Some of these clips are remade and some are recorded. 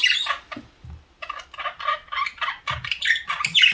recorded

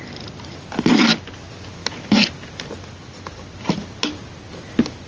recorded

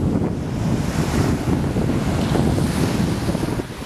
recorded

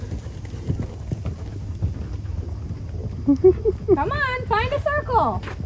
recorded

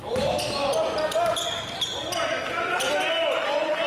recorded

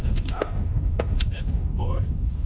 remade